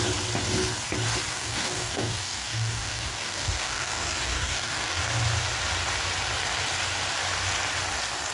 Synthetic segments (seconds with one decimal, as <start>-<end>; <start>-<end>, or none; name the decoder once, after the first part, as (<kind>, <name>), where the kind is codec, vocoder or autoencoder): 1.3-5.0 (codec, DAC)